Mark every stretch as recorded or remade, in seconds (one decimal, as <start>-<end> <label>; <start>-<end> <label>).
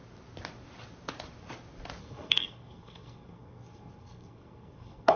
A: 0.0-2.0 recorded; 2.0-5.2 remade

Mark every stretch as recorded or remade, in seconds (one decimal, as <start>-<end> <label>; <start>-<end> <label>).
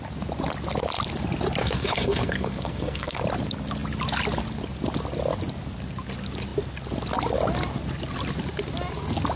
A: 0.0-1.6 recorded; 1.6-3.2 remade; 3.2-9.4 recorded